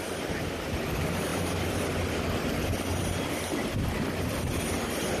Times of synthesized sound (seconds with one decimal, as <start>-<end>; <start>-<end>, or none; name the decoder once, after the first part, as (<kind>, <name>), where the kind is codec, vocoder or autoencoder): none